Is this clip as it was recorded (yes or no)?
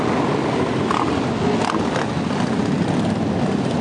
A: yes